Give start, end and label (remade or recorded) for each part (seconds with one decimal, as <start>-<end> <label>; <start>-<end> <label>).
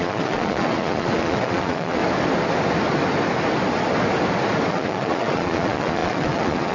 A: 0.0-2.0 remade; 2.0-4.7 recorded; 4.7-6.7 remade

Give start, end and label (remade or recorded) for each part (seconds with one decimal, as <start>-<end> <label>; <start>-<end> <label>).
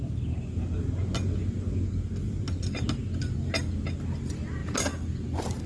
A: 0.0-5.7 recorded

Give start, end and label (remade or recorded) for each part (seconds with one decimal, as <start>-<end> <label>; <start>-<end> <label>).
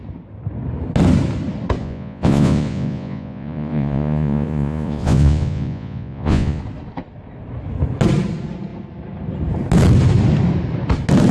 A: 0.0-1.8 recorded; 1.8-6.6 remade; 6.6-11.3 recorded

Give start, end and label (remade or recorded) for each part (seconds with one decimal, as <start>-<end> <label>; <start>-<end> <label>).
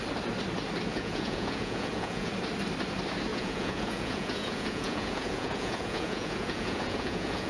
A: 0.0-0.9 recorded; 0.9-2.3 remade; 2.3-3.3 recorded; 3.3-7.5 remade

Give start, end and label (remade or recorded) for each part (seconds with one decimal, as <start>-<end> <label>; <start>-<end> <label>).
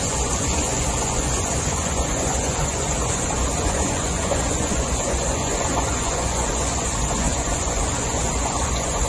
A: 0.0-9.1 remade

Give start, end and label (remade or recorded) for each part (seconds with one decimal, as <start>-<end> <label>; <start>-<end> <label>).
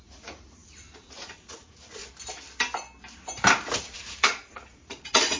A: 0.0-2.0 remade; 2.0-3.8 recorded; 3.8-5.4 remade